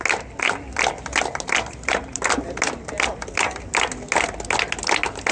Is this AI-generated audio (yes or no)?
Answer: no